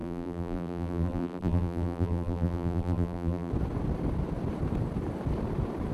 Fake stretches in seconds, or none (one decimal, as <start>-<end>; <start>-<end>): 0.0-3.5